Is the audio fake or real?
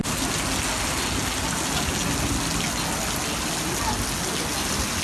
real